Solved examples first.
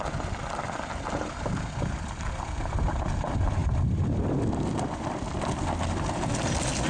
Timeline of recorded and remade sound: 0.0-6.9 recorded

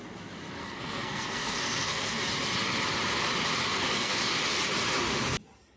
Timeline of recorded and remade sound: 0.0-0.6 recorded; 0.6-2.2 remade; 2.2-3.7 recorded; 3.7-4.2 remade; 4.2-5.8 recorded

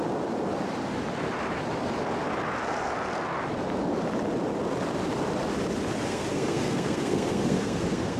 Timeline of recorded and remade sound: 0.0-6.1 recorded; 6.1-8.2 remade

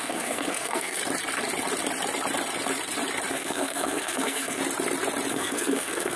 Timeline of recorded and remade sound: 0.0-1.0 remade; 1.0-3.3 recorded; 3.3-4.6 remade; 4.6-5.3 recorded; 5.3-6.2 remade

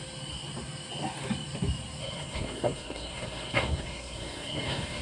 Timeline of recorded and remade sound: 0.0-2.0 recorded; 2.0-5.0 remade

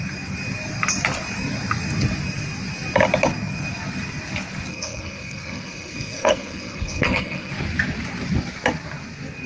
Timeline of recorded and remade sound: 0.0-4.7 recorded; 4.7-7.5 remade; 7.5-9.5 recorded